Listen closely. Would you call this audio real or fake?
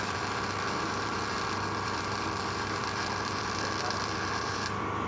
fake